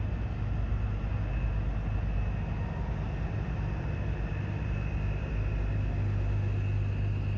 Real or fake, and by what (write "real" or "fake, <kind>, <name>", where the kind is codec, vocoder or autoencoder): real